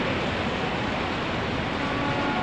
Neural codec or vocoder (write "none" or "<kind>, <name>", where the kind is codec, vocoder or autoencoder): none